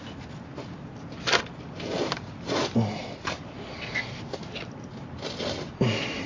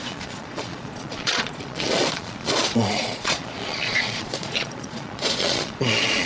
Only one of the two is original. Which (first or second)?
first